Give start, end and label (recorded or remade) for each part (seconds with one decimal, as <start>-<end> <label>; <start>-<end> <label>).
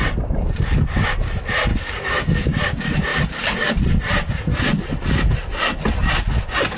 0.0-1.7 recorded; 1.7-2.6 remade; 2.6-6.8 recorded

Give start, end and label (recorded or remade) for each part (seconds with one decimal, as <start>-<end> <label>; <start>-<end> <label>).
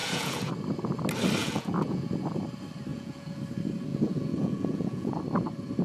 0.0-0.5 remade; 0.5-1.4 recorded; 1.4-2.0 remade; 2.0-2.9 recorded; 2.9-3.4 remade; 3.4-3.9 recorded; 3.9-5.1 remade; 5.1-5.8 recorded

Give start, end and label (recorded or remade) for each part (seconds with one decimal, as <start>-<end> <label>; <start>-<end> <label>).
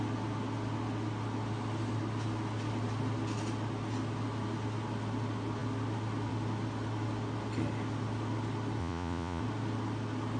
0.0-8.8 recorded; 8.8-9.4 remade; 9.4-10.4 recorded